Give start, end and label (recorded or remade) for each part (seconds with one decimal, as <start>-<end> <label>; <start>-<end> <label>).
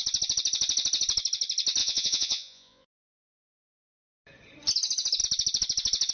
0.0-1.8 recorded; 1.8-3.7 remade; 3.7-6.1 recorded